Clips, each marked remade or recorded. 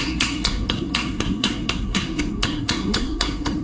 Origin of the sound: remade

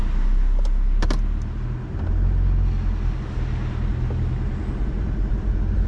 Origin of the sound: recorded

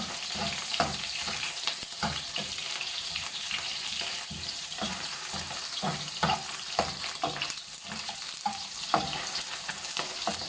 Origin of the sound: remade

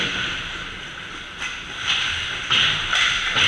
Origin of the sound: recorded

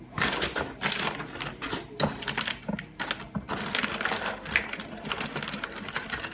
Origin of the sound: recorded